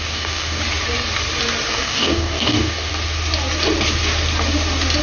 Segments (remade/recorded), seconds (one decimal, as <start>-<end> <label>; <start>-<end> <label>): 0.0-0.6 remade; 0.6-1.7 recorded; 1.7-2.9 remade; 2.9-5.0 recorded